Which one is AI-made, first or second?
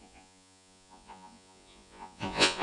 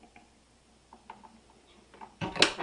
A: first